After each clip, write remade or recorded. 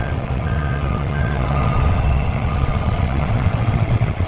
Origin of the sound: remade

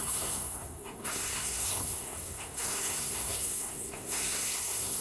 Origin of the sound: remade